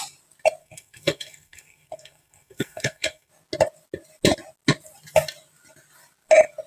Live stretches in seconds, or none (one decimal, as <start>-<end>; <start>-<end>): 0.0-0.6; 3.3-6.7